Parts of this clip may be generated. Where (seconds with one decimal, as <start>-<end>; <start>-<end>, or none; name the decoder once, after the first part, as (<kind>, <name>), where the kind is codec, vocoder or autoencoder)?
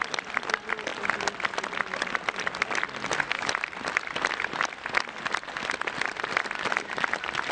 none